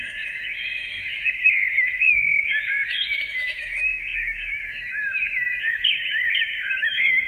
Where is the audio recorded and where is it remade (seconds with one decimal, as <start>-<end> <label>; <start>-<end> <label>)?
0.0-7.3 remade